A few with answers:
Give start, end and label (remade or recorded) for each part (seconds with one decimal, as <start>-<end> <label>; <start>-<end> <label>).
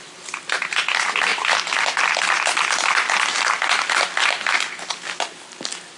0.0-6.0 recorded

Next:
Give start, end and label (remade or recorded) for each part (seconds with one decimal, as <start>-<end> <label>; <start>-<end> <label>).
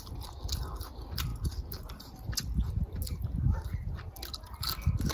0.0-5.1 recorded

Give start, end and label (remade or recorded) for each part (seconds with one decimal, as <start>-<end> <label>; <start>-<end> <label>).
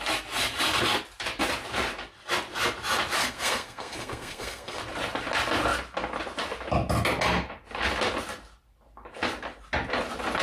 0.0-3.2 recorded; 3.2-4.8 remade; 4.8-10.4 recorded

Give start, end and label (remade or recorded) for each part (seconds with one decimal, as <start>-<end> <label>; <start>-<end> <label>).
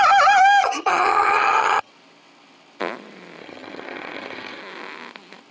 0.0-0.6 recorded; 0.6-1.9 remade; 1.9-3.4 recorded; 3.4-4.6 remade; 4.6-5.5 recorded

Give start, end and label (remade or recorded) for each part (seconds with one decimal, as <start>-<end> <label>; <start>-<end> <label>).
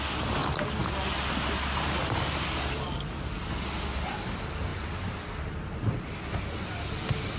0.0-7.4 recorded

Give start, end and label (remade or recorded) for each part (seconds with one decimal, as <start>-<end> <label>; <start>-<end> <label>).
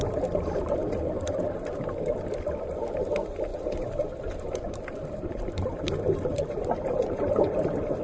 0.0-3.5 recorded; 3.5-7.4 remade; 7.4-8.0 recorded